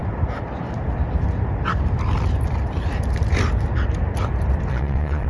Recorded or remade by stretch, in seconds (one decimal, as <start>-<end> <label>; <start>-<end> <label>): 0.0-4.7 recorded; 4.7-5.3 remade